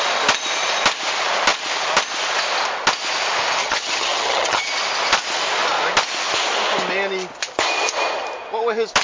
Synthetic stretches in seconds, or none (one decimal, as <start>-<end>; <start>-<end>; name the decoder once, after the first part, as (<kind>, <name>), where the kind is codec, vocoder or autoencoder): 3.6-4.7 (vocoder, HiFi-GAN)